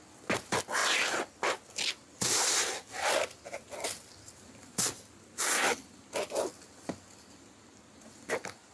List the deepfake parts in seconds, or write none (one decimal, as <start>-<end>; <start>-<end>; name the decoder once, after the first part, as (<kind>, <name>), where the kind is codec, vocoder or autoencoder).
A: none